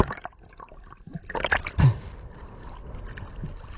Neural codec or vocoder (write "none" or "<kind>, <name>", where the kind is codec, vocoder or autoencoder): none